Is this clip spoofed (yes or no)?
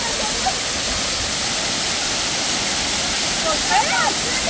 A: no